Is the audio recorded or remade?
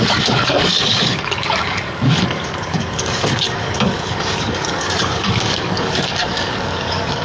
remade